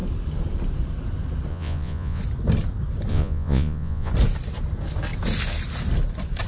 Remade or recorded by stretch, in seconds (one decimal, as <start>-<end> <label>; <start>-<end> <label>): 0.0-1.5 recorded; 1.5-2.2 remade; 2.2-3.1 recorded; 3.1-4.1 remade; 4.1-6.5 recorded